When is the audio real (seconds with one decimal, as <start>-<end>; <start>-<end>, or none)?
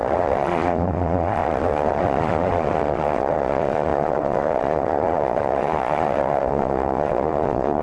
none